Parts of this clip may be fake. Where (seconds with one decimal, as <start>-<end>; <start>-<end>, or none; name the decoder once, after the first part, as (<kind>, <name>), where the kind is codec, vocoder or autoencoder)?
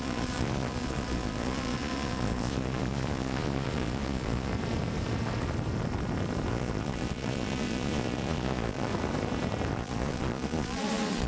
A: 0.0-4.5 (vocoder, Vocos); 6.5-8.9; 9.7-11.3